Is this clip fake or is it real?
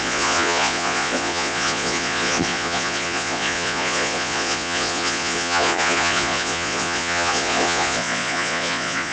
fake